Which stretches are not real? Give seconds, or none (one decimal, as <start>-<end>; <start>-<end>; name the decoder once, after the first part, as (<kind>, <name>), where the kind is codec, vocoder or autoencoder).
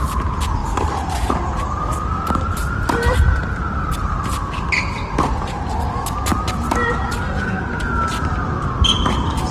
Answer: none